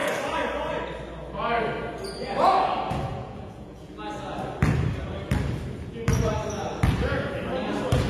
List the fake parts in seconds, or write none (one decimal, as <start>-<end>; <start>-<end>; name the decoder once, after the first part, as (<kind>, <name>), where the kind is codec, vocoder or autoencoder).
3.1-3.9 (vocoder, Vocos)